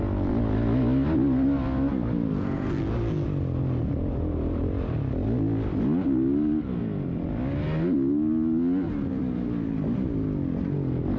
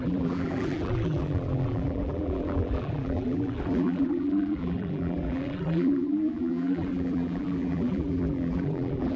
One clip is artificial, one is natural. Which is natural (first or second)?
first